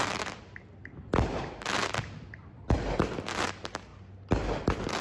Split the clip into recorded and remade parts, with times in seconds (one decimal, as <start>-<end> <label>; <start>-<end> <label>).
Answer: 0.0-5.0 recorded